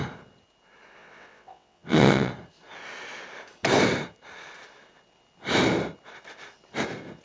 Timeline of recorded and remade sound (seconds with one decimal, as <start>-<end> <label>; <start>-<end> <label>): 0.0-1.0 recorded; 1.0-2.3 remade; 2.3-7.2 recorded